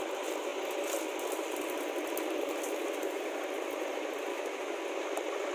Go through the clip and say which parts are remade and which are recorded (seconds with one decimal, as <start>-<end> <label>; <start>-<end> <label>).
0.0-4.3 recorded; 4.3-4.8 remade; 4.8-5.5 recorded